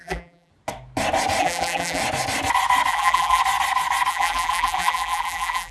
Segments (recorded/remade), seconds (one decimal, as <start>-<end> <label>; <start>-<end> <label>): 0.0-0.5 remade; 0.5-1.4 recorded; 1.4-2.0 remade; 2.0-2.9 recorded; 2.9-3.4 remade; 3.4-4.1 recorded; 4.1-5.7 remade